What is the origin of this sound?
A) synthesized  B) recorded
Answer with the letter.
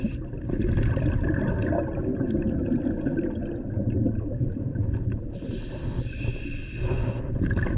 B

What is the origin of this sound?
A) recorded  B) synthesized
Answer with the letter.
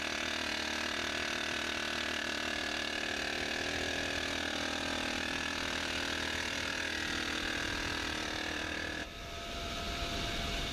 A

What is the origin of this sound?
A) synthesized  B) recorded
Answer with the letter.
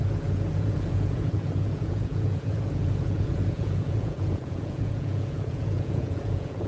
A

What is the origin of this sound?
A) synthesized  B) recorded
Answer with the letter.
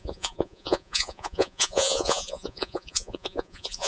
A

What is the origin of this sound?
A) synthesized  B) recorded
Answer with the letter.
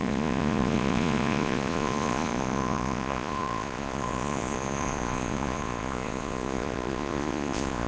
A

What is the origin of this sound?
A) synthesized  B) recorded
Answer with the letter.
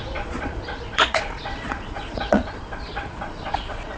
A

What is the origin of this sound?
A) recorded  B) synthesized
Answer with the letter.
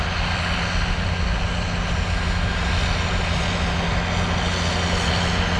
A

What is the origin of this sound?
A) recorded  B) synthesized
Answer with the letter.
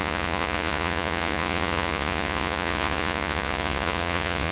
B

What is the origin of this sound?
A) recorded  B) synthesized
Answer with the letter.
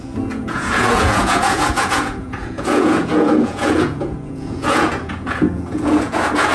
B